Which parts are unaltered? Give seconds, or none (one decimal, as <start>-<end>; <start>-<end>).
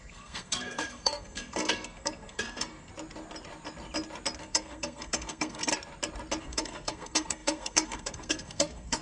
2.9-4.4; 5.7-6.4